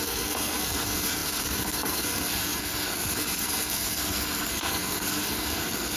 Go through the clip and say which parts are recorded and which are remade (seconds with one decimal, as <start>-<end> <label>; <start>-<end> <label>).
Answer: 0.0-6.0 remade